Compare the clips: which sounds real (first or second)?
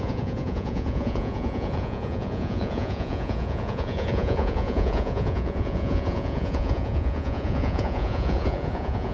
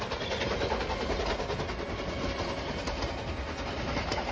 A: second